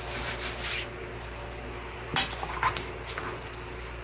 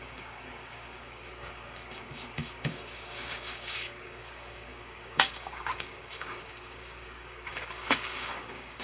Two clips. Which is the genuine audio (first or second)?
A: first